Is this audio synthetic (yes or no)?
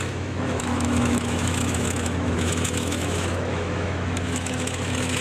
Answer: yes